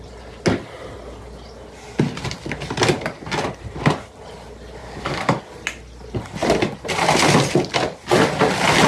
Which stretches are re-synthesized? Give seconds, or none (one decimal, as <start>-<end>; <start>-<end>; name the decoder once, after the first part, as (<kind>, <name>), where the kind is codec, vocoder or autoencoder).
4.8-5.4 (codec, DAC)